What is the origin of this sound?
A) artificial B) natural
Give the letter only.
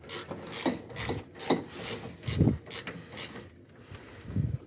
B